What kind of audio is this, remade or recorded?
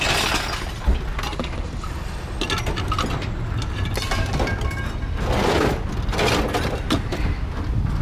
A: recorded